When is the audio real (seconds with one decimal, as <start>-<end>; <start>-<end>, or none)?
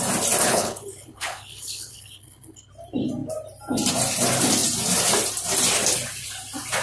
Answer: 0.0-0.4; 2.7-6.8